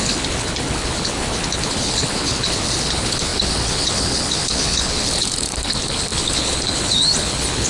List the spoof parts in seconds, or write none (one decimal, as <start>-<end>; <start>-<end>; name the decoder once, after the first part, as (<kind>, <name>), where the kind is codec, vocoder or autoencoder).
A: 0.0-7.7 (codec, HILCodec)